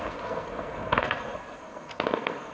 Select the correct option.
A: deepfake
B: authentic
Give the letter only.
A